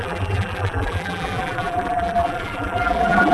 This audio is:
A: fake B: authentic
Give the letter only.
A